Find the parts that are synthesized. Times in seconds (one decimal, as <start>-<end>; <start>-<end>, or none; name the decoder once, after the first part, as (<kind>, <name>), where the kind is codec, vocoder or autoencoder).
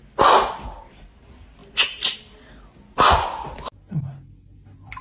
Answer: none